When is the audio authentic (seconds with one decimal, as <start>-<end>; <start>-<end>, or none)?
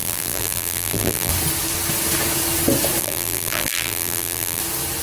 1.3-3.0; 4.6-5.0